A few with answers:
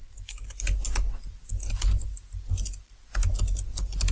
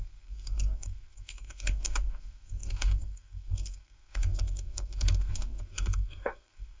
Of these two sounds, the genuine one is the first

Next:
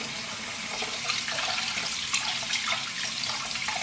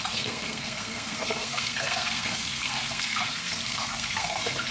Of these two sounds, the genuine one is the first